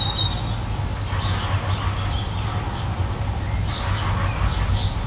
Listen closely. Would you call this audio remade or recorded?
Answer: recorded